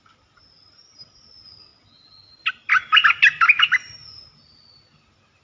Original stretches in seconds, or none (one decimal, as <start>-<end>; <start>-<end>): 0.0-5.4